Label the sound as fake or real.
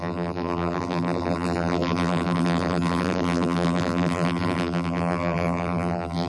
fake